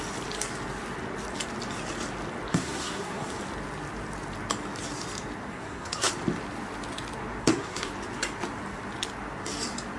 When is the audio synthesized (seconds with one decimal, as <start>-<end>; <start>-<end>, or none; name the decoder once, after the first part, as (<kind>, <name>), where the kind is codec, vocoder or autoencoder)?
2.5-3.3 (codec, SNAC); 5.5-6.1; 7.4-7.9